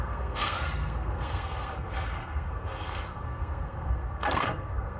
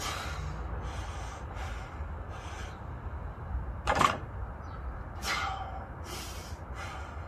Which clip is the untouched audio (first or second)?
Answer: second